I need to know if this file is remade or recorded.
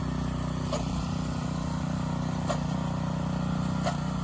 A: recorded